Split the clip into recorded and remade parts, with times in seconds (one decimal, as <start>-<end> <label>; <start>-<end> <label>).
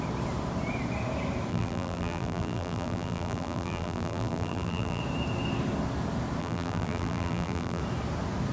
0.0-1.5 recorded; 1.5-5.0 remade; 5.0-6.4 recorded; 6.4-7.8 remade; 7.8-8.5 recorded